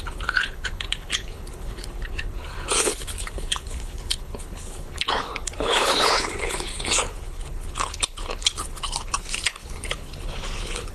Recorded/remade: remade